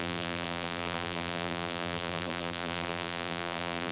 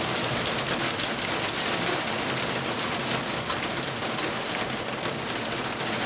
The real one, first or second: second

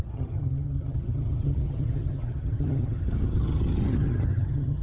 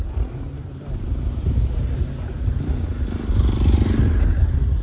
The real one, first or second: second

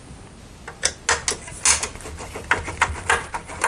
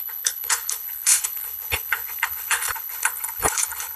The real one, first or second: first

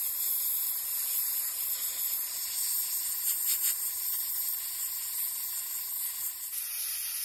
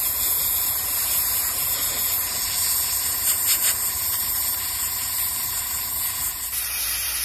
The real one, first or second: first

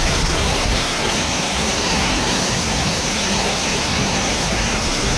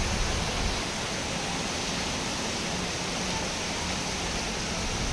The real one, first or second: second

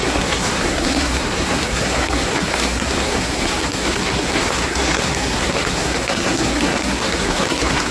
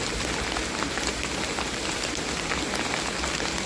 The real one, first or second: second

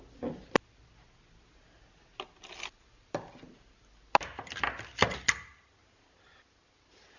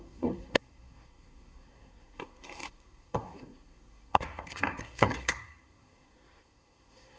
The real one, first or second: first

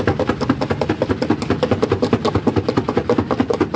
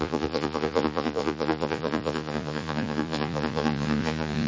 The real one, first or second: first